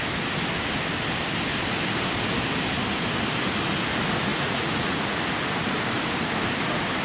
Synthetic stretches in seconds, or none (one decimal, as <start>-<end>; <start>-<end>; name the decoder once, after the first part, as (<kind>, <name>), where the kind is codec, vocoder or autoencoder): 4.3-5.2 (vocoder, Vocos)

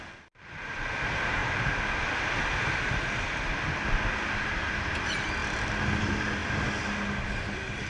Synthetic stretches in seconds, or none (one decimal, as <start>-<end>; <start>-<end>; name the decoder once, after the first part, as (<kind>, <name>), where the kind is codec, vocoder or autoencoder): none